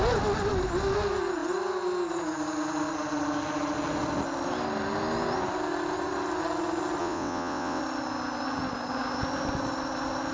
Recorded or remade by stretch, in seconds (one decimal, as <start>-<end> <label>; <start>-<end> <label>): 0.0-7.0 recorded; 7.0-7.8 remade; 7.8-10.3 recorded